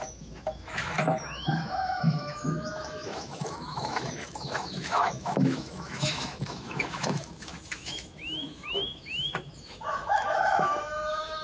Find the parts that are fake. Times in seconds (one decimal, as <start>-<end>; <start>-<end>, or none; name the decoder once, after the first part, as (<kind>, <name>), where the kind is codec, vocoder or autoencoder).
0.0-11.4 (autoencoder, DAC-VAE)